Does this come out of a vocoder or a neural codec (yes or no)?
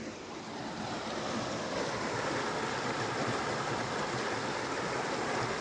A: no